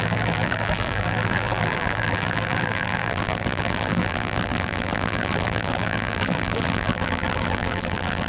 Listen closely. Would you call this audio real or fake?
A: fake